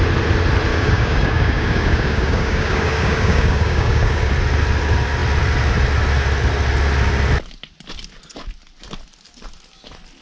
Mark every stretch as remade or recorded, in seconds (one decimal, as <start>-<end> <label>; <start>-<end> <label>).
0.0-0.7 recorded; 0.7-4.3 remade; 4.3-10.2 recorded

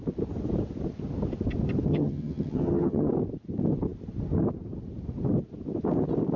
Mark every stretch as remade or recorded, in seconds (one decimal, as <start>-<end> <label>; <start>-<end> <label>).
0.0-1.9 recorded; 1.9-3.1 remade; 3.1-6.4 recorded